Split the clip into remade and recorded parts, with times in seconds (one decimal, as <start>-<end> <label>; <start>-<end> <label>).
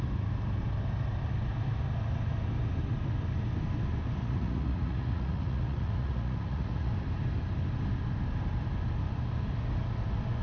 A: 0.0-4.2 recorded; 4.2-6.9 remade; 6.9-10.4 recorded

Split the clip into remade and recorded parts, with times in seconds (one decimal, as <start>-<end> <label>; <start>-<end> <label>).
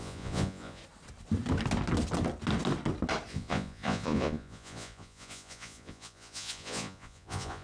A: 0.0-0.8 remade; 0.8-3.3 recorded; 3.3-7.6 remade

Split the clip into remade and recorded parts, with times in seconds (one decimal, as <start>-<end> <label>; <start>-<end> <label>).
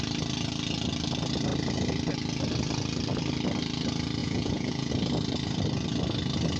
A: 0.0-4.2 recorded; 4.2-4.9 remade; 4.9-6.6 recorded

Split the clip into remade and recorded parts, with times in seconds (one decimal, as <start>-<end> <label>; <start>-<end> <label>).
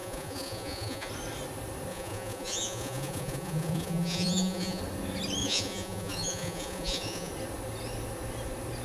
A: 0.0-1.1 remade; 1.1-1.9 recorded; 1.9-4.8 remade; 4.8-5.4 recorded; 5.4-7.3 remade; 7.3-8.8 recorded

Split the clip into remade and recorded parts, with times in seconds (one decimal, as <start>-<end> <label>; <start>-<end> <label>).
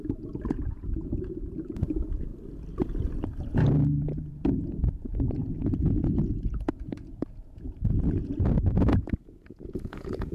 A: 0.0-2.3 remade; 2.3-3.5 recorded; 3.5-10.3 remade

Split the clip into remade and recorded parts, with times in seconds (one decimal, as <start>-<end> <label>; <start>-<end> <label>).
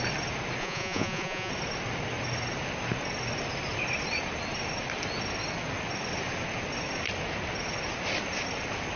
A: 0.0-0.6 recorded; 0.6-1.5 remade; 1.5-9.0 recorded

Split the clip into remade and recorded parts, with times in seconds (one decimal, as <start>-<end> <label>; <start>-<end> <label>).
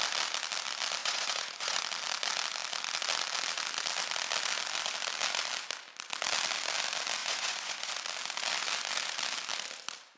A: 0.0-1.0 recorded; 1.0-1.8 remade; 1.8-7.2 recorded; 7.2-7.9 remade; 7.9-10.2 recorded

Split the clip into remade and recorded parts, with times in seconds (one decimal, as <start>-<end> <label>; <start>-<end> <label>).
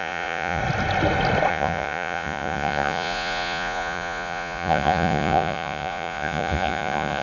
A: 0.0-0.6 remade; 0.6-1.5 recorded; 1.5-7.2 remade